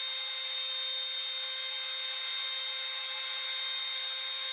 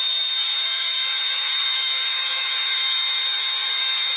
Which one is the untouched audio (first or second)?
first